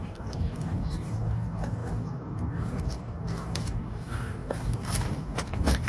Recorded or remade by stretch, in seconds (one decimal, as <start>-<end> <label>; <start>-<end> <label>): 0.0-5.9 remade